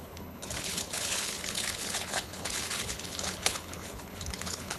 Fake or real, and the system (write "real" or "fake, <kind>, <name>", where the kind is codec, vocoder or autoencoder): fake, codec, HILCodec